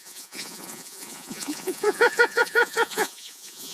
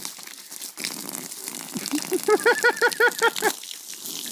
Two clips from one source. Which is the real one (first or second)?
second